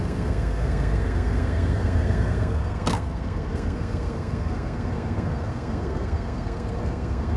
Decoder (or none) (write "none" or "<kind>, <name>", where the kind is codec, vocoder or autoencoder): codec, SNAC